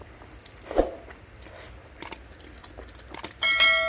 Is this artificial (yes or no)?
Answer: no